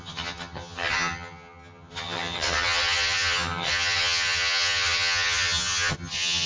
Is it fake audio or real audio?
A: fake